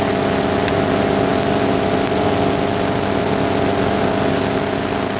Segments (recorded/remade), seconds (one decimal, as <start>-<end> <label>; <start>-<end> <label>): 0.0-5.2 recorded